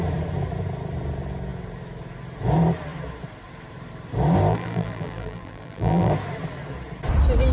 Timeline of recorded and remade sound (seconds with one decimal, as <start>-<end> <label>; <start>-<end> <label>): 0.0-4.5 recorded; 4.5-6.1 remade; 6.1-7.5 recorded